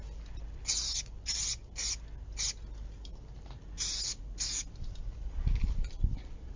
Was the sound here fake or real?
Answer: real